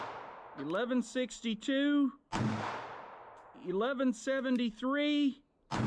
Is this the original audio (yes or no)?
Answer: yes